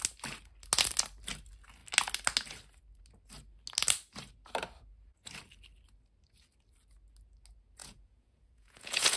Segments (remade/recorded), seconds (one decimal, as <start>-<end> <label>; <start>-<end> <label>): 0.0-7.8 recorded; 7.8-9.2 remade